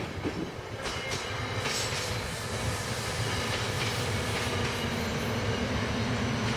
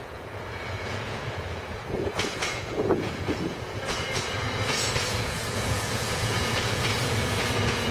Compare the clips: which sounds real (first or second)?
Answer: first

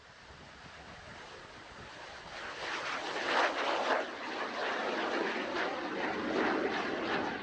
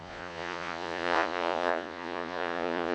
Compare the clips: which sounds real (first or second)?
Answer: first